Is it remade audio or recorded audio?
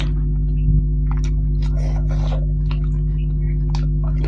recorded